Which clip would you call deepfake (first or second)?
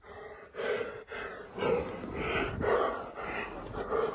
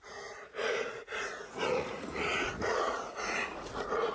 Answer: second